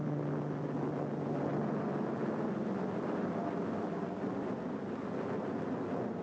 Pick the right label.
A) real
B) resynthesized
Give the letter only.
A